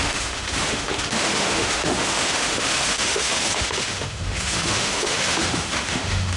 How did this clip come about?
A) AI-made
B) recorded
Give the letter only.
A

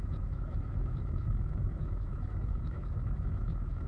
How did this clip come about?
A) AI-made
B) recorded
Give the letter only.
A